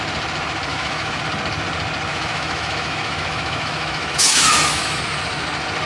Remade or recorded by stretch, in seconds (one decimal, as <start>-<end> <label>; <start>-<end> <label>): 0.0-0.7 recorded; 0.7-1.2 remade; 1.2-2.1 recorded; 2.1-5.0 remade; 5.0-5.9 recorded